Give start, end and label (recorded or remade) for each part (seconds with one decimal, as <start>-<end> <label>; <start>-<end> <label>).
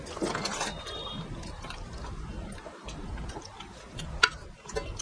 0.0-0.5 recorded; 0.5-3.5 remade; 3.5-5.0 recorded